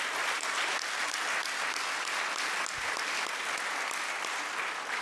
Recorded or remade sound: recorded